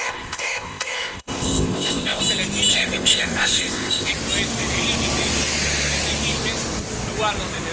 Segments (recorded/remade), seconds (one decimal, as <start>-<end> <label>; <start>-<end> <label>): 0.0-2.2 remade; 2.2-2.7 recorded; 2.7-4.1 remade; 4.1-7.7 recorded